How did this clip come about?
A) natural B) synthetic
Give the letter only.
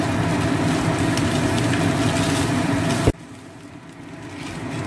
A